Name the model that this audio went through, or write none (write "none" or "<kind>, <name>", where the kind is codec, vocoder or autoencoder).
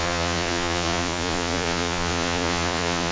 vocoder, Vocos